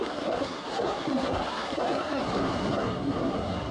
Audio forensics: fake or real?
fake